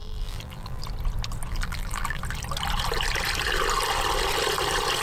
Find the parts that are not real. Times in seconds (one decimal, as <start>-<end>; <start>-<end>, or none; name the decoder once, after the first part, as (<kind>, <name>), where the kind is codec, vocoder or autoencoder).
0.0-0.8 (vocoder, BigVGAN v2); 1.5-2.2